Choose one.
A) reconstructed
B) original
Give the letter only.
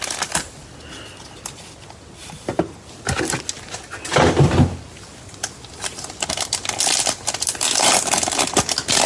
B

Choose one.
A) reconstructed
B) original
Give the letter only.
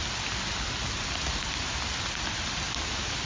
B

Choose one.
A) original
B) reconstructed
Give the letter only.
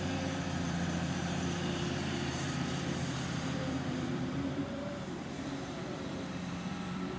B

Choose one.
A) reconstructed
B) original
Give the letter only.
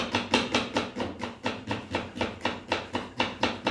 B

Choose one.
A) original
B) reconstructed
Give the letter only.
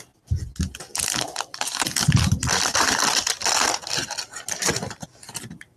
A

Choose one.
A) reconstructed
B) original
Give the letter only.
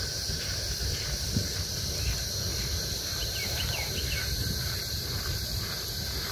A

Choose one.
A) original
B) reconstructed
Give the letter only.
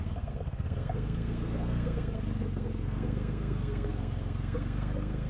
B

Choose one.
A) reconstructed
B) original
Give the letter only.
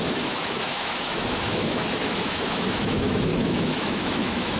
A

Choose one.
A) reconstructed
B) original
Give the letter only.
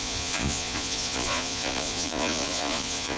A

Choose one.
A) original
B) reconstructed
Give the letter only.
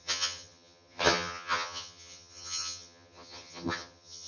B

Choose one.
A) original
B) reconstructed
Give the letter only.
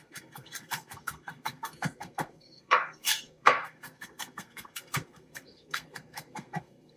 B